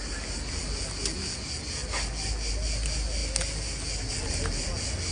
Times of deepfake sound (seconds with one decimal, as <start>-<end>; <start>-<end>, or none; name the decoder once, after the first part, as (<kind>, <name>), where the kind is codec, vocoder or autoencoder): none